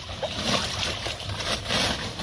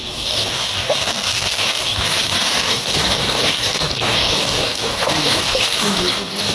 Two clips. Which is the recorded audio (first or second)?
first